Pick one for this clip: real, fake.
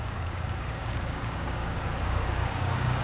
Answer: fake